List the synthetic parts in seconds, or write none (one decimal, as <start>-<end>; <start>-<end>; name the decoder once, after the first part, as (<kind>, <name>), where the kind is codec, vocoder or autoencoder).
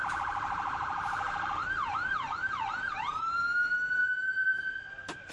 0.0-5.3 (vocoder, BigVGAN v2)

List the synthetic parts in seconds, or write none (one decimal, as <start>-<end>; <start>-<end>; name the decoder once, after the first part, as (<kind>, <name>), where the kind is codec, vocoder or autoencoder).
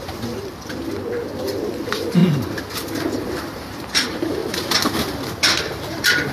0.0-0.5 (vocoder, BigVGAN v2); 1.2-2.2; 3.2-4.4; 5.8-6.3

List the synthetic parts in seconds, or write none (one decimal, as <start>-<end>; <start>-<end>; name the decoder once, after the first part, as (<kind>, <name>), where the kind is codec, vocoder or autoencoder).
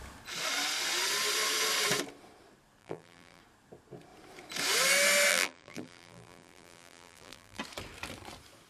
2.8-3.4 (vocoder, BigVGAN v2); 5.3-7.6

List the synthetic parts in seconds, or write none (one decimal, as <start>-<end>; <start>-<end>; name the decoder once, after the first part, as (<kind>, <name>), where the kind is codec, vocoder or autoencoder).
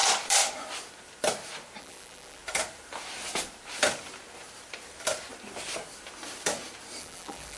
1.8-2.4 (vocoder, BigVGAN v2); 7.0-7.6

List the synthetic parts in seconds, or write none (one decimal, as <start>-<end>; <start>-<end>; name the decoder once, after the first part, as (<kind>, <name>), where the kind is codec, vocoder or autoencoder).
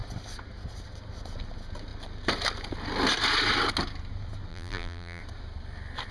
4.5-5.2 (vocoder, BigVGAN v2)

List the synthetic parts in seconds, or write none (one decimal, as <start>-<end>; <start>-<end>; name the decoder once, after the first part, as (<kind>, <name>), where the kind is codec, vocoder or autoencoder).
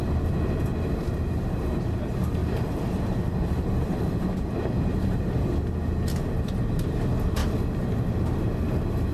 2.4-5.6 (vocoder, BigVGAN v2)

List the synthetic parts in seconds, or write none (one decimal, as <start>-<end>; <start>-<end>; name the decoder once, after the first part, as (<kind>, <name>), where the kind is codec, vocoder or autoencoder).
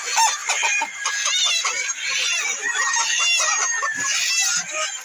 none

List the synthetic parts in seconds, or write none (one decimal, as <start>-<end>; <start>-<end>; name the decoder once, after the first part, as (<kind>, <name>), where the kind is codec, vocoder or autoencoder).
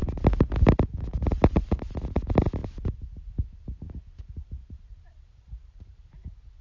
1.1-2.6 (vocoder, BigVGAN v2); 4.2-6.6